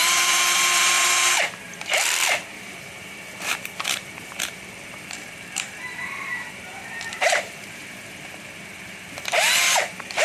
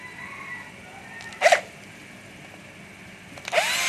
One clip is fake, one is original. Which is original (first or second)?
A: second